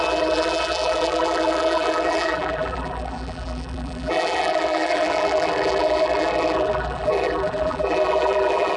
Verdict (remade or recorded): remade